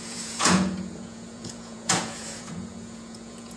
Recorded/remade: remade